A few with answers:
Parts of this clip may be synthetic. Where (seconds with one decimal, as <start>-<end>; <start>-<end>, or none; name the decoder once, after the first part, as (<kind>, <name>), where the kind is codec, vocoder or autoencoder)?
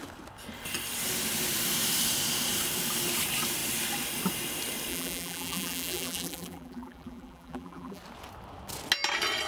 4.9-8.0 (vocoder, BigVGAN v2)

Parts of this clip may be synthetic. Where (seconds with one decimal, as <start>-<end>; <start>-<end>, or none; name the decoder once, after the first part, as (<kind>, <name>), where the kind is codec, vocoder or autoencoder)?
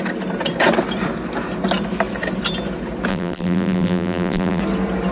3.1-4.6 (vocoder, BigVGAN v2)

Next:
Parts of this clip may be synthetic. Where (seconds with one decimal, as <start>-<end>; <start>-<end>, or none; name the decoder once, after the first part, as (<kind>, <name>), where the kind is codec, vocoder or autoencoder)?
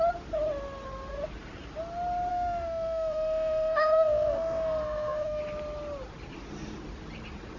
2.3-5.4 (autoencoder, DAC-VAE)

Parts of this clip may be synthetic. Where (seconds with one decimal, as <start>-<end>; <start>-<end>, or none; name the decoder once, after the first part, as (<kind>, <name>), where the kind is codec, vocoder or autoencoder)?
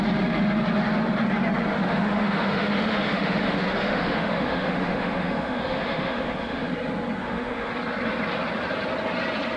1.7-6.7 (autoencoder, DAC-VAE); 7.2-7.7